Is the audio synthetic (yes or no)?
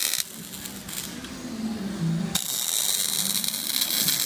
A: no